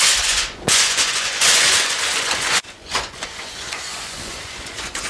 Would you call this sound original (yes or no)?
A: no